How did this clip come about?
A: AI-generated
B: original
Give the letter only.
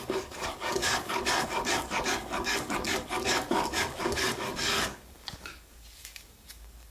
A